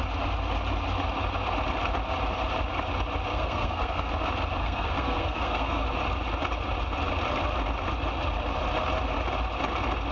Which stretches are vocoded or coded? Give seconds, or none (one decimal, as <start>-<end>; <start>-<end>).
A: 3.3-4.1; 4.6-5.8

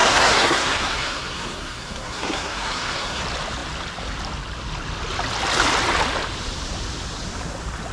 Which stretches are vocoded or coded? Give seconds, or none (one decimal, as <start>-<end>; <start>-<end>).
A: 0.0-3.2

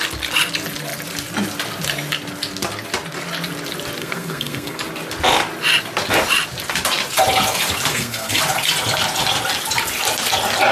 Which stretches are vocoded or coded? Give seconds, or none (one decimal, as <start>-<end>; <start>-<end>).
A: 4.0-4.8; 7.9-8.4

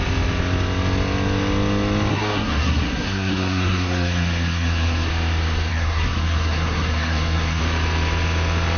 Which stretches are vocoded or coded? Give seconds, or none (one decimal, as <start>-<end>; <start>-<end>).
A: 2.1-5.1; 5.7-7.6

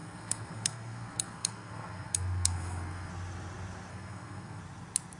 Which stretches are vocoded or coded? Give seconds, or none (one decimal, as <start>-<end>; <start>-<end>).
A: 0.0-3.1; 3.9-4.6